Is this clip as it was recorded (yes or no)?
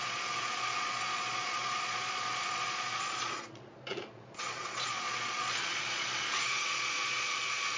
no